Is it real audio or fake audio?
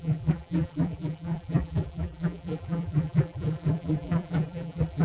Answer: fake